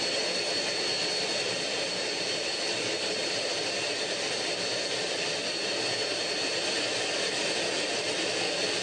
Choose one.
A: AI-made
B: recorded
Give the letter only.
B